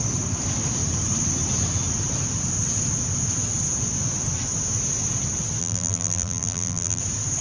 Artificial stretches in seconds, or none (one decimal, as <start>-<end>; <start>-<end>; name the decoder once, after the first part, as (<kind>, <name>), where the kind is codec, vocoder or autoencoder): 5.6-7.0 (vocoder, BigVGAN v2)